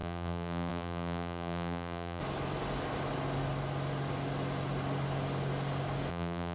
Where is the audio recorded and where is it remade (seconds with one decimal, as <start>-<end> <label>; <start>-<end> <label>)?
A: 0.0-2.2 remade; 2.2-6.1 recorded; 6.1-6.5 remade